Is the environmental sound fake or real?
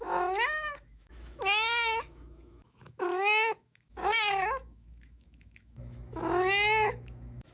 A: fake